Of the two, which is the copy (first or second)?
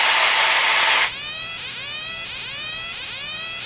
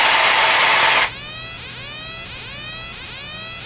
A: first